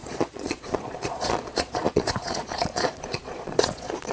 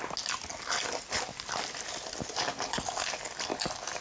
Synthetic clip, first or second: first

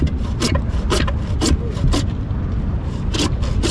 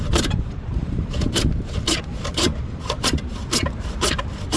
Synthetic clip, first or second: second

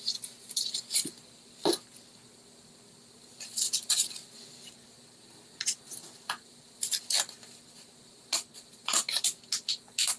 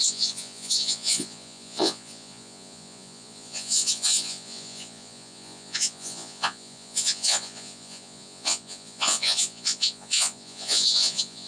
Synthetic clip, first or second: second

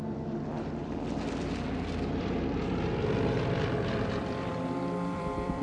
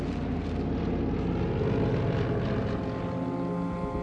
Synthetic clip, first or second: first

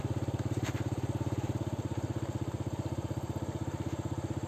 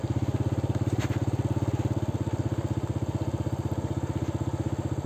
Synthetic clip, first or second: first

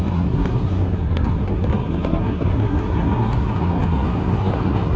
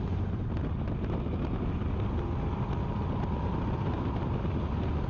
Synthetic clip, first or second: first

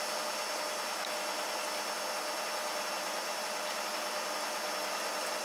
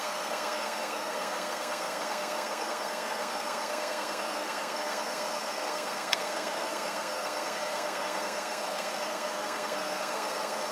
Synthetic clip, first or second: second